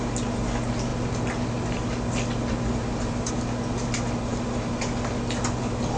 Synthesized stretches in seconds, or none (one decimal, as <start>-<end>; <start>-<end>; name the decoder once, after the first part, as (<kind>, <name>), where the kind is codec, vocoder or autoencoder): none